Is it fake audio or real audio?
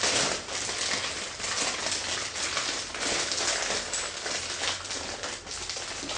real